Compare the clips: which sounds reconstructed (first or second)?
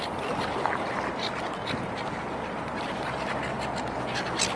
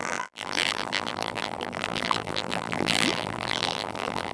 second